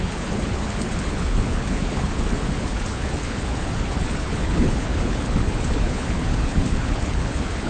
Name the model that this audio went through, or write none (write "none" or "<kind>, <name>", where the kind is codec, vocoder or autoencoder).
codec, HILCodec